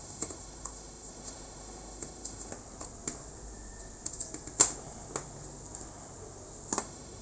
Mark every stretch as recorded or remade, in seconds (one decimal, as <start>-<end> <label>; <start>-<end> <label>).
0.0-2.5 remade; 2.5-6.8 recorded; 6.8-7.2 remade